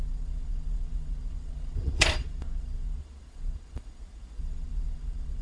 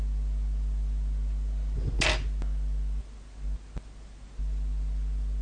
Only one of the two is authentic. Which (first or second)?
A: second